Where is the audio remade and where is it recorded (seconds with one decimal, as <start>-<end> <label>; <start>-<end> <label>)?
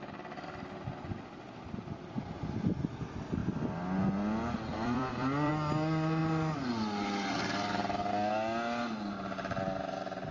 0.0-4.7 recorded; 4.7-5.5 remade; 5.5-10.3 recorded